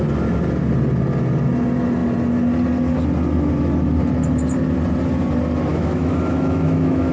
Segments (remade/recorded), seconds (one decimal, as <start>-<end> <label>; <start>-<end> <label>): 0.0-5.7 recorded; 5.7-7.1 remade